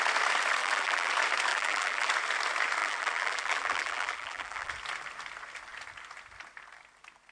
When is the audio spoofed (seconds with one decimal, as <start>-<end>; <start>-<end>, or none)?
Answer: 0.6-1.1; 1.5-2.1; 2.8-4.7